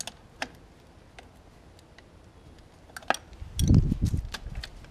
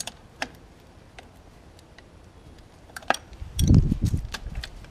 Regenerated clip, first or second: second